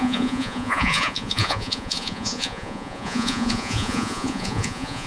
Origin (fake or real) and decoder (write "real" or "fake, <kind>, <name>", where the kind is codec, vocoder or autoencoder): fake, vocoder, Vocos